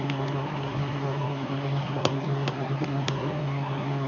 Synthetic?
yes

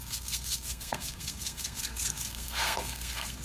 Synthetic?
yes